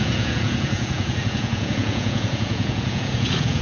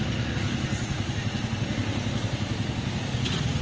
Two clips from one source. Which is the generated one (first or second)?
first